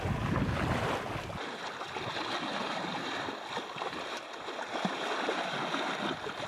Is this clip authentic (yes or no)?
yes